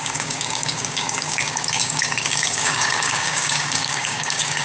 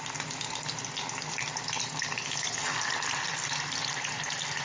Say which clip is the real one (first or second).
second